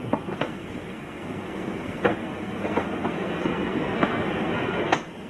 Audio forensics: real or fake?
fake